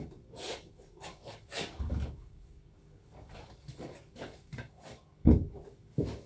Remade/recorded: remade